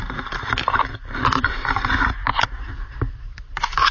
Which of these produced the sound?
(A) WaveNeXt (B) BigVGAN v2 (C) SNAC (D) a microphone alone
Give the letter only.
B